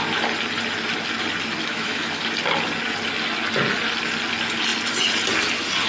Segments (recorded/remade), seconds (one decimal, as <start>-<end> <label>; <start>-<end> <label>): 0.0-1.7 recorded; 1.7-2.2 remade; 2.2-5.9 recorded